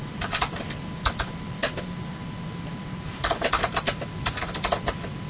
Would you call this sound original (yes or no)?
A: yes